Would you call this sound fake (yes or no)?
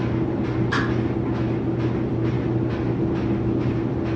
no